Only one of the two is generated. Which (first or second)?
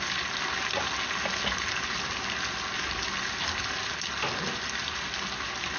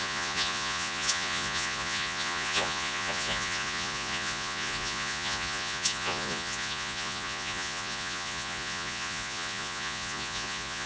second